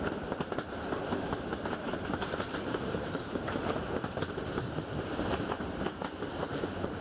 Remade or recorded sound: remade